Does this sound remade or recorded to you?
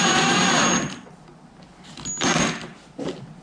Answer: recorded